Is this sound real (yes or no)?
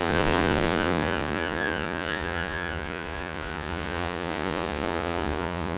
no